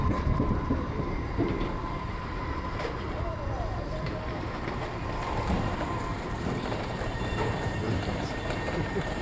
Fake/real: fake